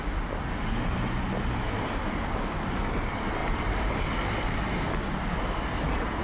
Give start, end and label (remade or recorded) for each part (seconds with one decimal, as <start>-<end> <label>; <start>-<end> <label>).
0.0-3.4 recorded; 3.4-4.0 remade; 4.0-6.2 recorded